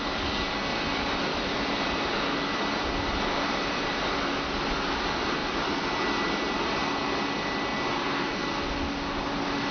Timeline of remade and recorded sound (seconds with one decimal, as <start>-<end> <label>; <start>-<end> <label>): 0.0-0.7 recorded; 0.7-3.7 remade; 3.7-5.4 recorded; 5.4-6.5 remade; 6.5-9.7 recorded